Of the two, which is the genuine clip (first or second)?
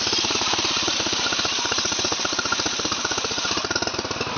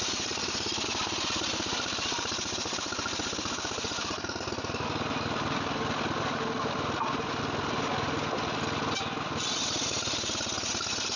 second